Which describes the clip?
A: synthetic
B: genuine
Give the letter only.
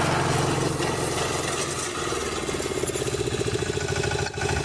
B